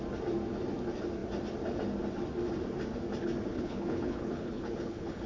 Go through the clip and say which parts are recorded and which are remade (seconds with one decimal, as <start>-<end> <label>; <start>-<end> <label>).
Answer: 0.0-3.5 recorded; 3.5-5.3 remade